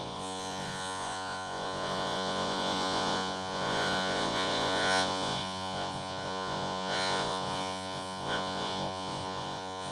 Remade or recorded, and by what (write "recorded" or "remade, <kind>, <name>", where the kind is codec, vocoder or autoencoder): remade, vocoder, Vocos